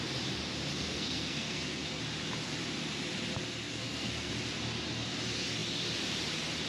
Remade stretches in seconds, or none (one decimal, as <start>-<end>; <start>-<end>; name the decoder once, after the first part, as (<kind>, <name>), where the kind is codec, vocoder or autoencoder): 0.7-2.0 (codec, SNAC); 3.7-4.3